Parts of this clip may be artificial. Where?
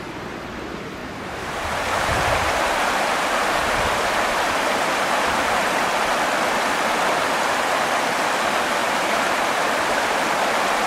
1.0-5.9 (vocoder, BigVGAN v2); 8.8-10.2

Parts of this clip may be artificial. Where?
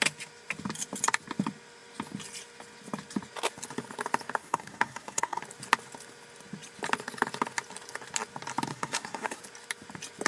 4.4-5.4 (codec, SNAC); 8.7-9.4